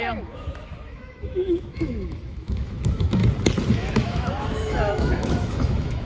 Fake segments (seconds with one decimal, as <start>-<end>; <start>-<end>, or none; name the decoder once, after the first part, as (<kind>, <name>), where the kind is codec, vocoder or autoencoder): 0.0-3.2 (autoencoder, DAC-VAE); 3.7-6.1

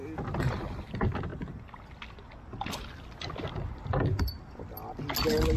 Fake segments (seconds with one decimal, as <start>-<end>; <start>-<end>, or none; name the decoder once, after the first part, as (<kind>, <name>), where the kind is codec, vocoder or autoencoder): none